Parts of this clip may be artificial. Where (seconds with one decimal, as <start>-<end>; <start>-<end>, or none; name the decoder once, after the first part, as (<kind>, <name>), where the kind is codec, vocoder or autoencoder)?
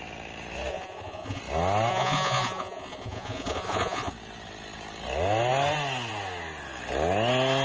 0.7-1.4 (vocoder, Vocos); 1.9-4.1